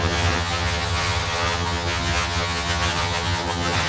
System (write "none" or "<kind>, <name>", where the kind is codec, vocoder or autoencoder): vocoder, HiFi-GAN